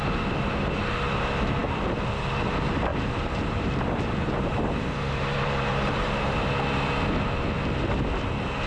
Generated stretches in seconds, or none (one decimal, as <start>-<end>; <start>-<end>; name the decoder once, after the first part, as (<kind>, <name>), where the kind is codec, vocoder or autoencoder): 2.9-6.5 (vocoder, BigVGAN v2)